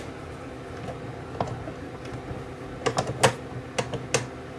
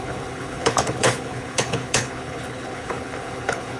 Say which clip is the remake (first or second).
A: second